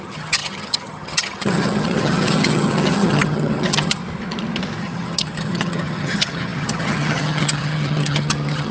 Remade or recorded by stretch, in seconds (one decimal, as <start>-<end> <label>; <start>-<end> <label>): 0.0-4.0 remade; 4.0-4.8 recorded; 4.8-8.7 remade